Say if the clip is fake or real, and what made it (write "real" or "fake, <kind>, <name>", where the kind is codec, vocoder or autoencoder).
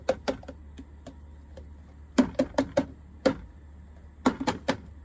real